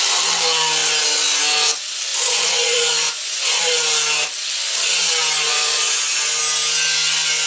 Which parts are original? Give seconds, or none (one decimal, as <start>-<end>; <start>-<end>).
0.0-2.1; 3.6-5.5; 6.4-7.5